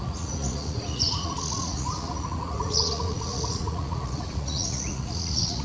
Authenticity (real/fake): fake